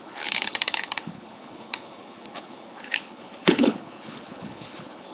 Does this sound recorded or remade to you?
remade